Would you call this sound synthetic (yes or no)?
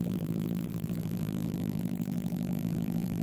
yes